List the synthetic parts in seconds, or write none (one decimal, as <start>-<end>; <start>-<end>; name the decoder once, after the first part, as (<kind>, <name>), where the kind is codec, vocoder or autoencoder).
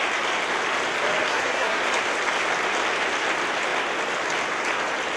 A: 1.3-1.8 (codec, SNAC)